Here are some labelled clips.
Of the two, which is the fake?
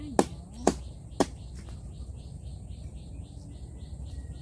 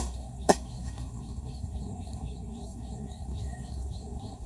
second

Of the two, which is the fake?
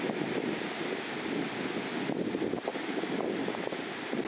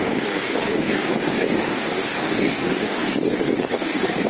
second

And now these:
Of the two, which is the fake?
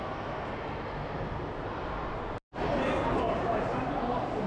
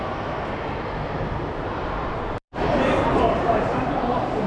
second